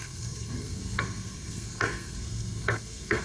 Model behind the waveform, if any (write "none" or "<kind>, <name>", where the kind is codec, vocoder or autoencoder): codec, SNAC